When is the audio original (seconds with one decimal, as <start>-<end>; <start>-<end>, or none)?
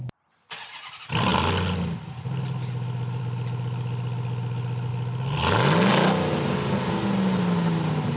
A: 0.0-8.2